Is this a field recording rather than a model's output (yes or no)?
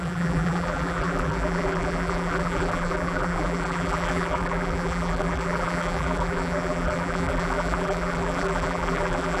no